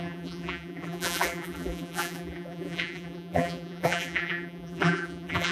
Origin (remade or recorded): remade